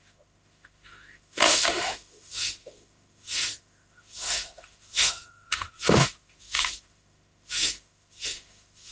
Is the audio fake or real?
fake